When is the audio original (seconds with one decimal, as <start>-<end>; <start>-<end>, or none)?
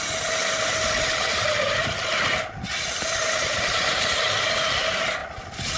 0.0-5.8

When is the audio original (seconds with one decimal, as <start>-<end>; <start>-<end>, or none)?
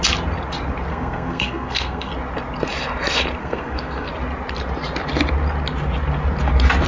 0.0-0.9; 2.1-3.4; 4.1-6.9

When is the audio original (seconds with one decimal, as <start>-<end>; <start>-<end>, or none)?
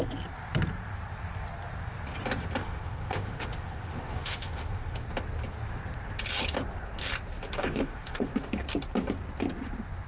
0.0-2.6; 5.0-7.6; 8.3-10.1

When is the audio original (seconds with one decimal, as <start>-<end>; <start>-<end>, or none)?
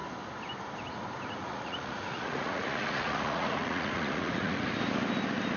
0.0-1.4; 4.7-5.6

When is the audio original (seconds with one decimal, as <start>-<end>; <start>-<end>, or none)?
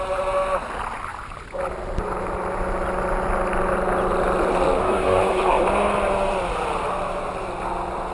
0.0-4.8; 5.6-8.1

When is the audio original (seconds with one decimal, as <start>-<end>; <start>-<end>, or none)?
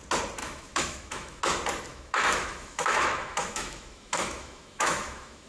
0.0-0.4; 1.4-1.9